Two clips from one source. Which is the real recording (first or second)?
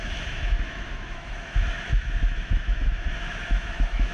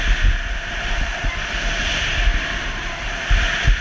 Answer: second